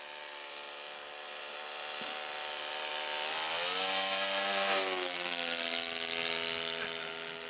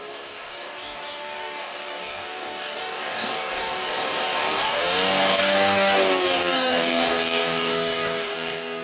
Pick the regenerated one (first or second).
second